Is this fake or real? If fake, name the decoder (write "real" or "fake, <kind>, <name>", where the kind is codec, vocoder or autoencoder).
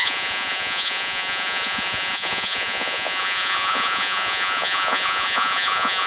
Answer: fake, vocoder, Vocos